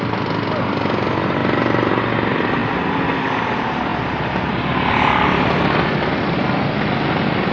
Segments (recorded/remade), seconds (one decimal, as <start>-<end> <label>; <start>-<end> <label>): 0.0-7.5 recorded